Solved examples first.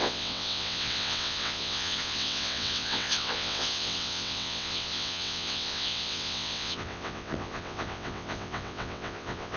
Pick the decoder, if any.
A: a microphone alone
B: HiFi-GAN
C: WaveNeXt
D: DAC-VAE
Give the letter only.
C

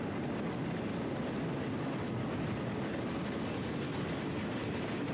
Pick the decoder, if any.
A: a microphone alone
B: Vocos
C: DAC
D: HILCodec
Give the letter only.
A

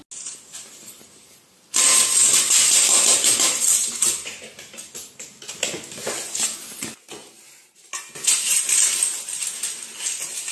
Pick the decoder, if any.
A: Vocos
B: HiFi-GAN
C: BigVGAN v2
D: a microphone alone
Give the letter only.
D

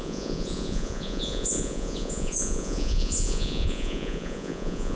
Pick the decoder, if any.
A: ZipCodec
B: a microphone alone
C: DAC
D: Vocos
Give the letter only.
D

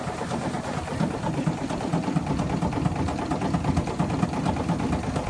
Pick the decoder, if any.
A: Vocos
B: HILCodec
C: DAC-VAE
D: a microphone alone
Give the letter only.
D